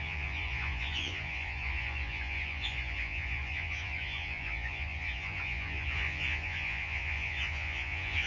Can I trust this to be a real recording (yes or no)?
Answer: no